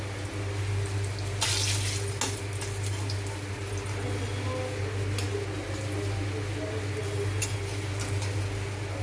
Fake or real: real